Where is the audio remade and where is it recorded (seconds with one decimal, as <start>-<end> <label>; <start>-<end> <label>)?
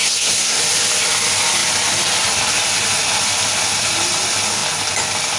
0.0-0.6 remade; 0.6-5.4 recorded